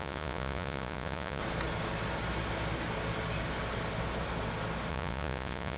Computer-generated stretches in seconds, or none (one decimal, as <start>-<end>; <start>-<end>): 0.0-1.4; 4.9-5.8